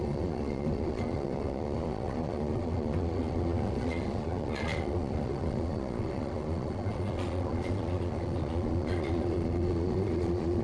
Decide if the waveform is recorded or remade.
remade